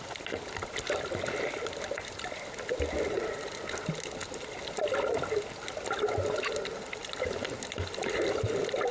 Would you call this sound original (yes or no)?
yes